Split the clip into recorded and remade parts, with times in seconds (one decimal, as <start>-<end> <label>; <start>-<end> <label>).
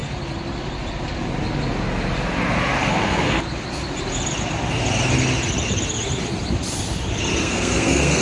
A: 0.0-2.8 recorded; 2.8-3.4 remade; 3.4-7.4 recorded; 7.4-8.2 remade